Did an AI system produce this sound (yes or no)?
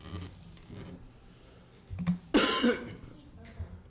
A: no